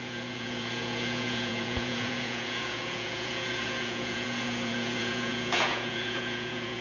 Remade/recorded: remade